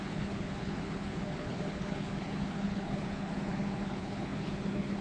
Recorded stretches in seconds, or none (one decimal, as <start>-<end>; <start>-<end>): none

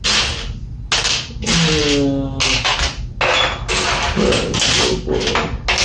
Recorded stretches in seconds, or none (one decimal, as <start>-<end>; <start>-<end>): 0.0-5.8

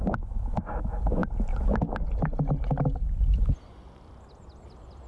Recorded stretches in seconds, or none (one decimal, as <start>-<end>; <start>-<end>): 0.0-5.1